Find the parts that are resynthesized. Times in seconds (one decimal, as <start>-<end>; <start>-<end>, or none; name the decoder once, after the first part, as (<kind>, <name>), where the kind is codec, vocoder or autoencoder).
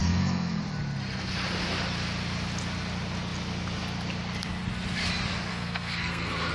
0.0-0.6 (codec, SNAC); 5.5-6.5